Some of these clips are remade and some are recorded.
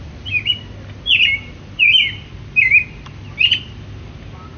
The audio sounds recorded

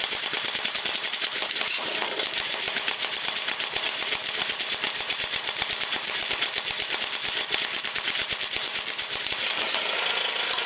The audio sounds remade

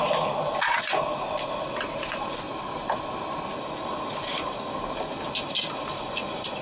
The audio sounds recorded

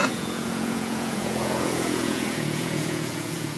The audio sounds remade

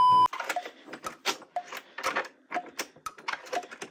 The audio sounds recorded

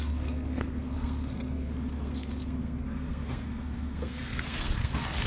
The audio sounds remade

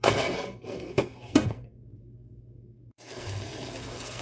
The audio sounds remade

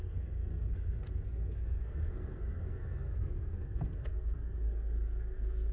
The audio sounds remade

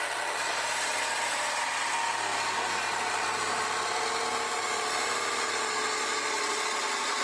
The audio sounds recorded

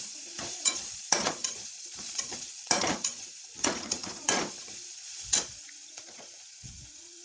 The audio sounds remade